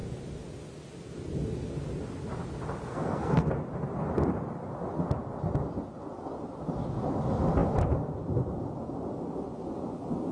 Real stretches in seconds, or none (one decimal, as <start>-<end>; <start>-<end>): 0.0-2.9; 3.5-10.3